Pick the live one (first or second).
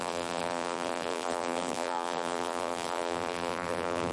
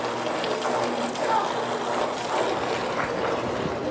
second